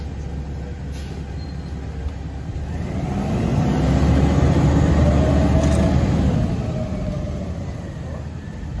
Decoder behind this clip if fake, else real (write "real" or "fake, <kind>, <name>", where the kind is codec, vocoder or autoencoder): real